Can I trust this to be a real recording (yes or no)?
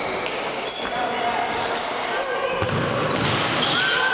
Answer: yes